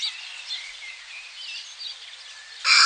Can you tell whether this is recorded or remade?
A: remade